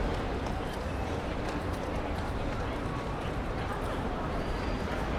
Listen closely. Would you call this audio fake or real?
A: real